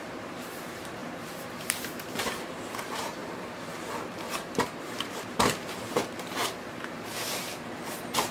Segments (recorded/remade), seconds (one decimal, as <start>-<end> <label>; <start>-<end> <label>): 0.0-3.2 remade; 3.2-4.0 recorded; 4.0-8.3 remade